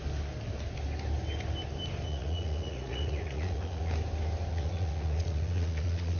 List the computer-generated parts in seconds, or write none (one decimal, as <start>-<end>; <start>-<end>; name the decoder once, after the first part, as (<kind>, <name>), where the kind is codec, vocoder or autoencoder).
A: 2.1-3.9 (vocoder, Vocos); 4.5-6.2

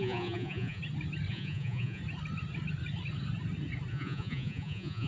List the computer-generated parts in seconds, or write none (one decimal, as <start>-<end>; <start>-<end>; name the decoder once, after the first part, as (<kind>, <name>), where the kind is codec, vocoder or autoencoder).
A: 0.0-0.8 (vocoder, Vocos); 1.3-2.0; 3.9-5.1

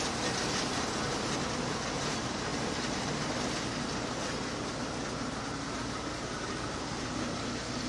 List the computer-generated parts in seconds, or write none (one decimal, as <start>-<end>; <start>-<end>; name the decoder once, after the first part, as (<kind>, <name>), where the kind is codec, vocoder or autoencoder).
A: none